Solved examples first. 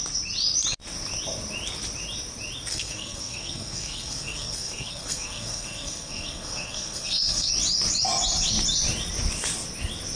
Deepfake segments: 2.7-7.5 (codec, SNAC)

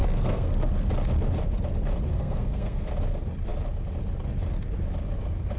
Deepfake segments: 0.0-0.9 (codec, SNAC); 2.1-2.9